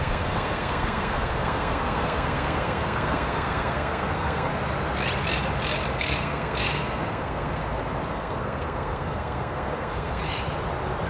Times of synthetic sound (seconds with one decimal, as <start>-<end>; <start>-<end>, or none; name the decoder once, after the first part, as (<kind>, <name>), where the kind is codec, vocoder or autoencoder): 0.0-4.5 (codec, SNAC); 6.0-7.6; 8.1-10.2